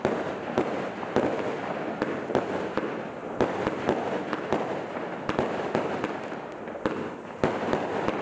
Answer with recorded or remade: recorded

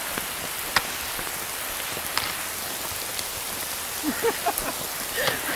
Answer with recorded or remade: recorded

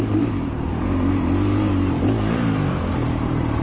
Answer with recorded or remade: remade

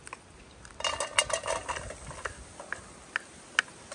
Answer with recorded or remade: recorded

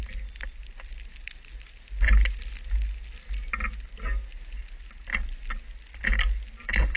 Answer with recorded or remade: recorded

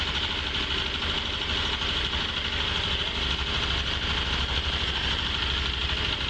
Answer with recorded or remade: recorded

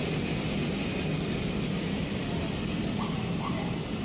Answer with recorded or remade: recorded